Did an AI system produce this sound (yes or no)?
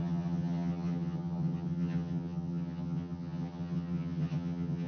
yes